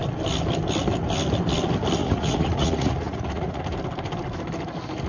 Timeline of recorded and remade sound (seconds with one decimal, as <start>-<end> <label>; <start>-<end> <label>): 0.0-2.0 recorded; 2.0-3.6 remade; 3.6-5.1 recorded